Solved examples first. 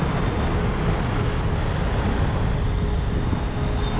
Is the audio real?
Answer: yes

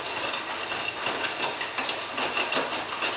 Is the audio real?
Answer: yes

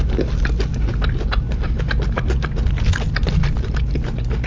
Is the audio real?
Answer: yes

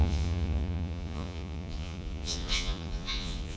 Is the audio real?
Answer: no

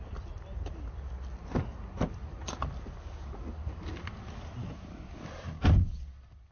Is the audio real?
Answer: yes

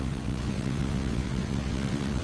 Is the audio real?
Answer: no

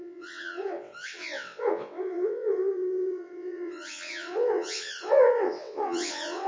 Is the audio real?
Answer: no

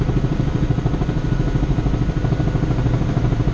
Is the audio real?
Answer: yes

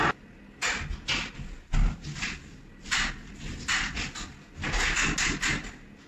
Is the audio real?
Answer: yes